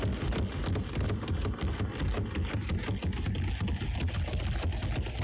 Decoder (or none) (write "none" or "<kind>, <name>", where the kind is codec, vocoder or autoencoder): none